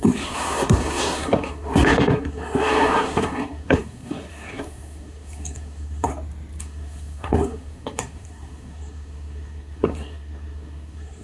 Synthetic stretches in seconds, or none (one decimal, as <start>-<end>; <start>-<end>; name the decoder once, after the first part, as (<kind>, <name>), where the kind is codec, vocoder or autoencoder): 0.0-6.1 (codec, SNAC); 6.6-11.2